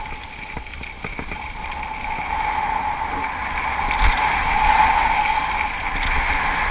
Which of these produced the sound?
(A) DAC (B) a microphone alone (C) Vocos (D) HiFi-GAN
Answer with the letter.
B